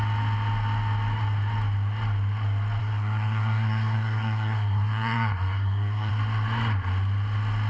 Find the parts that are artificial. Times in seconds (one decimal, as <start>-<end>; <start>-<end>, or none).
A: 2.8-6.1